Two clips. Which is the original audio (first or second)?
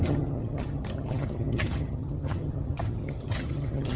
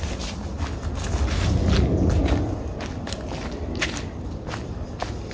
second